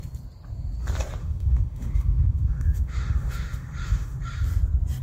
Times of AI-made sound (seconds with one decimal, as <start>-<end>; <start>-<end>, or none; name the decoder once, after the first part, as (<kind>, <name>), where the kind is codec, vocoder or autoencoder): 1.2-4.2 (autoencoder, DAC-VAE)